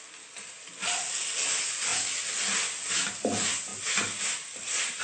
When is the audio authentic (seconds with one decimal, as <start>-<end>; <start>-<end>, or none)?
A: 0.0-5.0